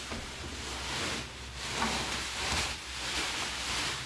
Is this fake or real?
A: real